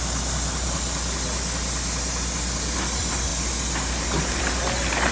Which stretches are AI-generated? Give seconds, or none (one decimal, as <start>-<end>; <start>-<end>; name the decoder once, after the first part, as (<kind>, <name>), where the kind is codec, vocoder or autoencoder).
none